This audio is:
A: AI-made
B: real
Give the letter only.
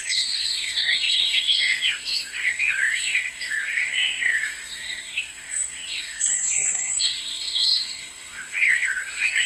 A